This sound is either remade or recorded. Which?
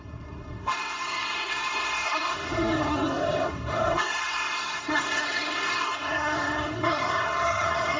remade